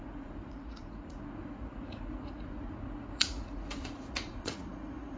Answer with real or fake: fake